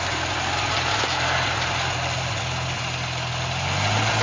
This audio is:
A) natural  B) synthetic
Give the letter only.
A